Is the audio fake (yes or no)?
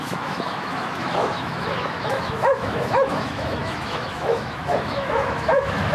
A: yes